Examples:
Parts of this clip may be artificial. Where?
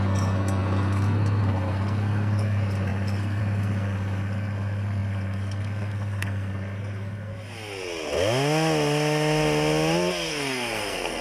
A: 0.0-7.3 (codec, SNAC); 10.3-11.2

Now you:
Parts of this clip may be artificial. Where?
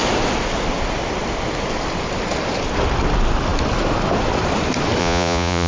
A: 5.0-5.7 (vocoder, Vocos)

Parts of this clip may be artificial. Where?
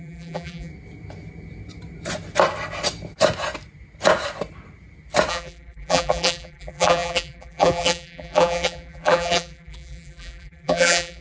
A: 0.0-0.7 (vocoder, BigVGAN v2); 5.3-11.2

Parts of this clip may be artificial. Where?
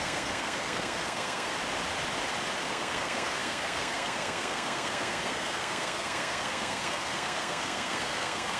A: 0.0-1.5 (codec, SNAC); 2.7-8.6